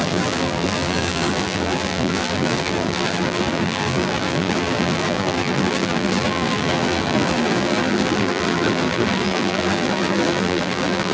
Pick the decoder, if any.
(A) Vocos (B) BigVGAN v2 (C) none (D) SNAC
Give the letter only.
B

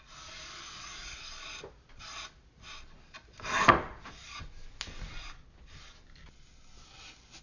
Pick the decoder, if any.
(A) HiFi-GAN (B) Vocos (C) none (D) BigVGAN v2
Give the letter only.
C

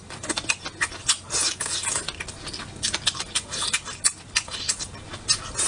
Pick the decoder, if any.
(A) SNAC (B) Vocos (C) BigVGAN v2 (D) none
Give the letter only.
D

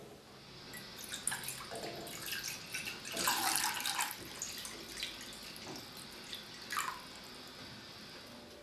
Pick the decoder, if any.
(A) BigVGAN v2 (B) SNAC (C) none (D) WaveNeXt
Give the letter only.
C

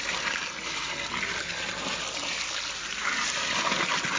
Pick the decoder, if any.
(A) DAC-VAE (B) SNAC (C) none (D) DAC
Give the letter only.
C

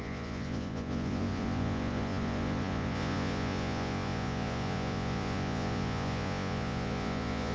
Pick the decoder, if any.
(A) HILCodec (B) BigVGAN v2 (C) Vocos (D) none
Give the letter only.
C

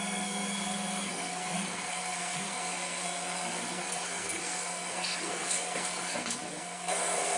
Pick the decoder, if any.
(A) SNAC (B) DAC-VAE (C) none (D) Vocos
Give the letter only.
A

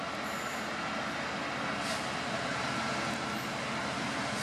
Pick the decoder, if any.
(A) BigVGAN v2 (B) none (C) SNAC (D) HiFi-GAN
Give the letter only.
B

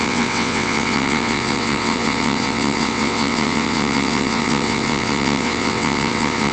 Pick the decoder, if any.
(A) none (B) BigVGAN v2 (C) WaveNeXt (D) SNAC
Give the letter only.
C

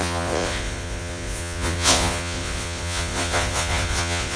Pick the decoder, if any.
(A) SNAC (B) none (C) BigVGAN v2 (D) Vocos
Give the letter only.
D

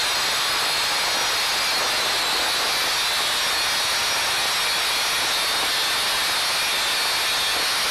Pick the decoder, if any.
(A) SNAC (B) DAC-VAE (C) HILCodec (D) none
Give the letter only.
D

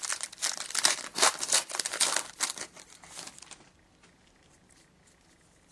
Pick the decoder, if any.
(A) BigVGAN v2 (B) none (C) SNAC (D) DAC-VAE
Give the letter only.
B